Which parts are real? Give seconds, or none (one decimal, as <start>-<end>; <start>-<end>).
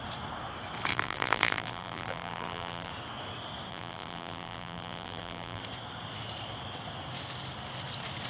0.0-0.9; 2.9-3.7; 5.6-8.3